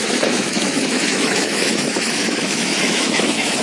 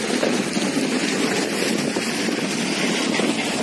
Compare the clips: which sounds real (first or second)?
second